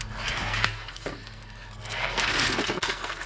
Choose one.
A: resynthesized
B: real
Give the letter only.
A